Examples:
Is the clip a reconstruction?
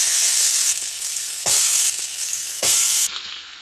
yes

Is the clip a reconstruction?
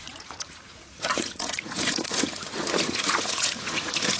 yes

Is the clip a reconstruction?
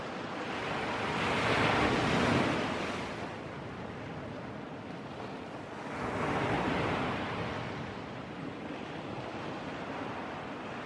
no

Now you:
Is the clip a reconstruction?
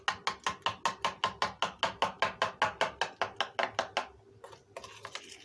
no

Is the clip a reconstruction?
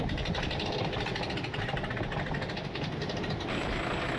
no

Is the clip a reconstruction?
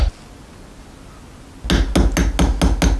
no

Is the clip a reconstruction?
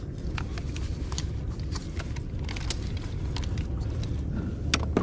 no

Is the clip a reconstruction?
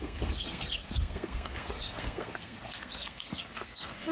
yes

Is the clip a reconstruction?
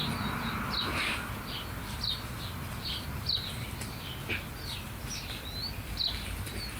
no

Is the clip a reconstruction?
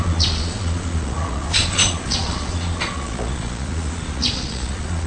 yes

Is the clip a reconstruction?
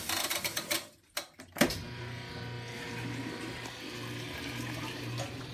no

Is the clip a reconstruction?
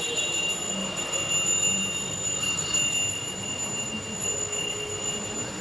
no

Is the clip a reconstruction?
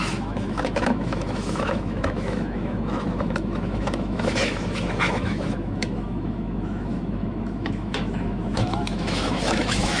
yes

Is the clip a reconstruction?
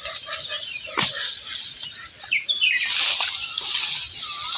no